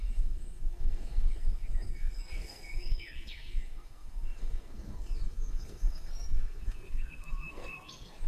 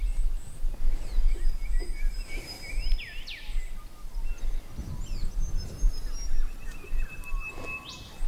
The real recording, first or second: second